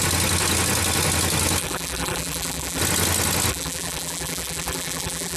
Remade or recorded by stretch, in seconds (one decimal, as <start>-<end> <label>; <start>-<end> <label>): 0.0-1.6 recorded; 1.6-2.8 remade; 2.8-3.5 recorded; 3.5-5.4 remade